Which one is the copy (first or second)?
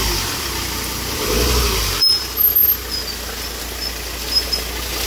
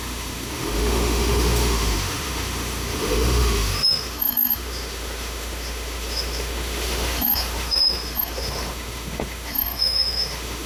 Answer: second